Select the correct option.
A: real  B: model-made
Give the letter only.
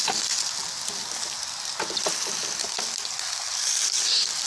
A